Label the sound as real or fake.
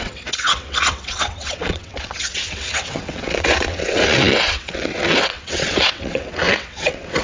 fake